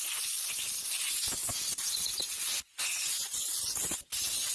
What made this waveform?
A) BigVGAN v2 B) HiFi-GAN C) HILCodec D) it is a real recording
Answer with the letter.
D